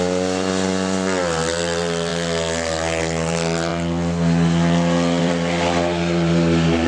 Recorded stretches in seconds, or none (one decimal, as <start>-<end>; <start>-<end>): 2.1-3.0; 3.7-5.2